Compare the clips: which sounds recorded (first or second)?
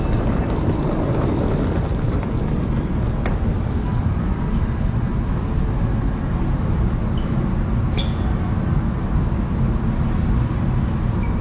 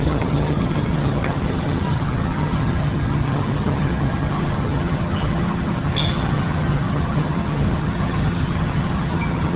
first